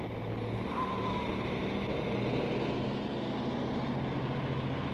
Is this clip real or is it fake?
real